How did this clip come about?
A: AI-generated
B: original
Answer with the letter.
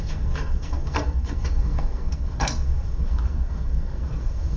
A